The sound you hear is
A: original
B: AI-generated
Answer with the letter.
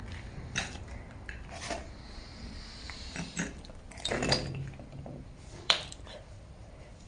B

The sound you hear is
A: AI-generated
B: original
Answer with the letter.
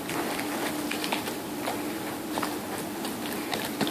A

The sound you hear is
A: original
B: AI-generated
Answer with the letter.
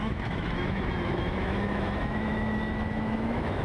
B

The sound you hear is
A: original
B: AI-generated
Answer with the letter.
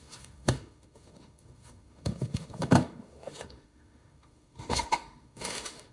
B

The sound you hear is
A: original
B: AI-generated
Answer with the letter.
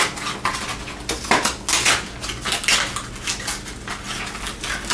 A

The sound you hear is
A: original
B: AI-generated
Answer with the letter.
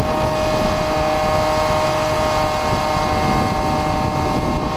A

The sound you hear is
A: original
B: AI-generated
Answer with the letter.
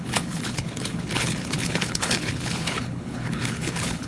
B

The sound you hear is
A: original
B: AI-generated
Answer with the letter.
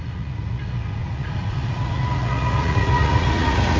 B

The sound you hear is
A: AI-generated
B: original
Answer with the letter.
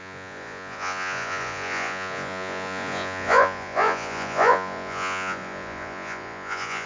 A